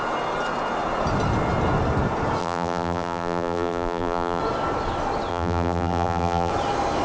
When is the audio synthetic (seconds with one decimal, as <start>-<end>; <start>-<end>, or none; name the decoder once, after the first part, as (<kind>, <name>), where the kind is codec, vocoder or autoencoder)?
2.4-4.4 (vocoder, BigVGAN v2); 5.3-6.5